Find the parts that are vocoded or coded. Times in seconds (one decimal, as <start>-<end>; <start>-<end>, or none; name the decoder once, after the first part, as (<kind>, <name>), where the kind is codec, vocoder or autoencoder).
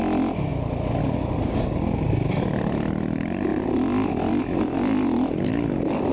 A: 3.5-4.4 (vocoder, BigVGAN v2); 5.5-6.1